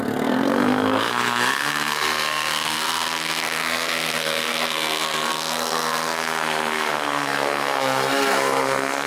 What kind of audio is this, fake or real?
fake